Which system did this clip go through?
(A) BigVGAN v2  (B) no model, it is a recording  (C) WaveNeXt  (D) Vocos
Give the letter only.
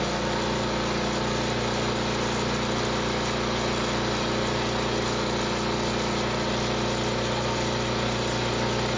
B